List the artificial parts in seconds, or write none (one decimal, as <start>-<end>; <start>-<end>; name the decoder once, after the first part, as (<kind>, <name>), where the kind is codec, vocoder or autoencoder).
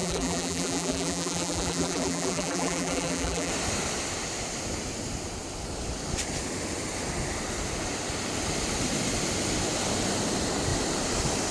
0.0-3.5 (vocoder, BigVGAN v2)